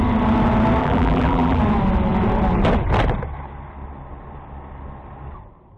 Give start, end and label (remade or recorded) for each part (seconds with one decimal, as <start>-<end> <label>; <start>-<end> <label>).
0.0-0.8 recorded; 0.8-1.6 remade; 1.6-5.8 recorded